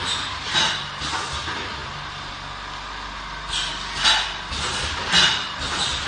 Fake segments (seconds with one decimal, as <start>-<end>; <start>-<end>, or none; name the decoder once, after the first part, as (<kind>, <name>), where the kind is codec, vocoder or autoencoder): none